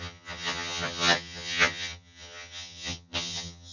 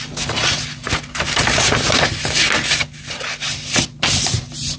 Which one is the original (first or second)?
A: second